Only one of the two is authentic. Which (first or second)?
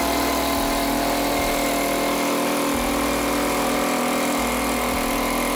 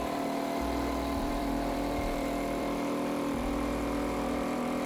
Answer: first